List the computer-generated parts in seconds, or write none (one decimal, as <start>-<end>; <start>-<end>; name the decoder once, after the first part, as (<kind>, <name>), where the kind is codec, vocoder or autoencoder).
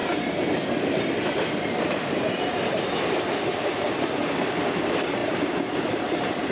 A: 0.0-5.2 (vocoder, BigVGAN v2); 5.8-6.5